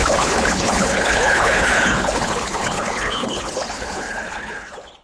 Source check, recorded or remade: remade